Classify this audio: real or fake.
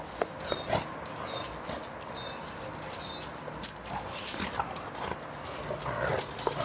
real